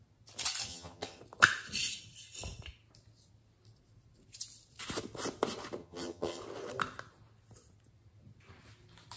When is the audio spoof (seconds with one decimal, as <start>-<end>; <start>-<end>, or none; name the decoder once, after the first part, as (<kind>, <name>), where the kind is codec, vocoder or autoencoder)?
0.7-1.2 (vocoder, HiFi-GAN); 5.8-6.4